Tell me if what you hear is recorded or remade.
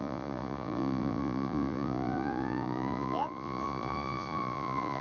remade